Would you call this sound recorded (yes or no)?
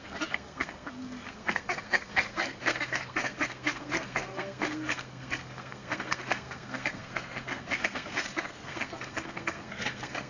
no